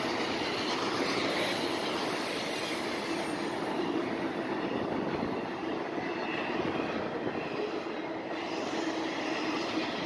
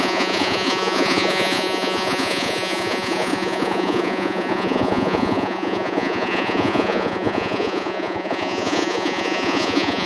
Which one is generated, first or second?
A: second